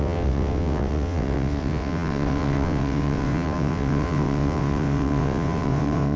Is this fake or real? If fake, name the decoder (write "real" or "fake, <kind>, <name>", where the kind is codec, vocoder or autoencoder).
fake, vocoder, WaveNeXt